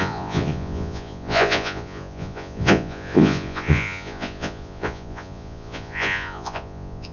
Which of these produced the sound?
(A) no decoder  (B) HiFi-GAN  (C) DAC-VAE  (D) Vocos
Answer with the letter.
D